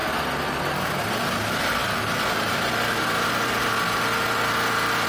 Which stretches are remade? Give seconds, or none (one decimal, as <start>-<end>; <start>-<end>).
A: none